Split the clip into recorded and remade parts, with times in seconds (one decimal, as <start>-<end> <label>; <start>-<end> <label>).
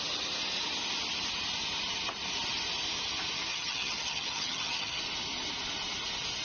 0.0-3.5 recorded; 3.5-5.0 remade; 5.0-6.4 recorded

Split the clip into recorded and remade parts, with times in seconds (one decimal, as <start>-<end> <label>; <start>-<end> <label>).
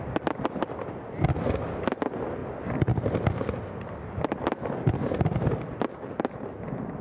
0.0-7.0 recorded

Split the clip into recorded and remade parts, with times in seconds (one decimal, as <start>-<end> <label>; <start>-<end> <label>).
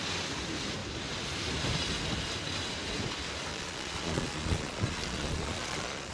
0.0-3.5 recorded; 3.5-6.1 remade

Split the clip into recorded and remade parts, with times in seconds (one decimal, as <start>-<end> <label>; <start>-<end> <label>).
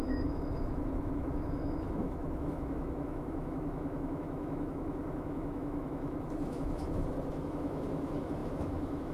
0.0-9.1 remade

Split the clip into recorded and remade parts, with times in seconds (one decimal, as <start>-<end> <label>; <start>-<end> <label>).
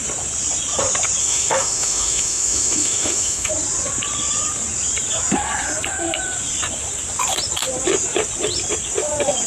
0.0-1.2 recorded; 1.2-3.5 remade; 3.5-9.5 recorded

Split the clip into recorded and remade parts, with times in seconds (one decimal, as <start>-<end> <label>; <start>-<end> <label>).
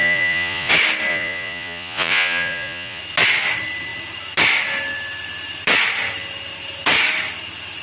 0.0-0.7 remade; 0.7-1.1 recorded; 1.1-3.0 remade; 3.0-7.8 recorded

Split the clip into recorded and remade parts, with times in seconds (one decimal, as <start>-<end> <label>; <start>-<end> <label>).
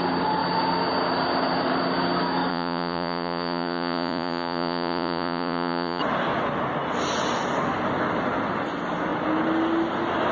0.0-2.5 recorded; 2.5-6.0 remade; 6.0-10.3 recorded